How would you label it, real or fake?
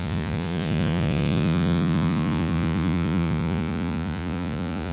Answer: fake